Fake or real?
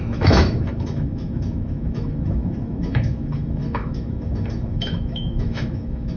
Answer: fake